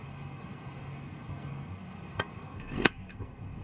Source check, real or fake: fake